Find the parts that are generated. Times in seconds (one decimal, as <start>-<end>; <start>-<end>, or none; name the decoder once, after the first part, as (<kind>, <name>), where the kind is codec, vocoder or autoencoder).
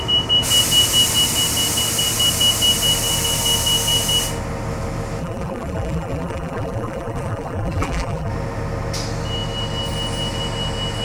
5.2-8.3 (vocoder, BigVGAN v2)